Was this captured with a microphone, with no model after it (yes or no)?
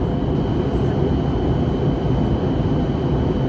yes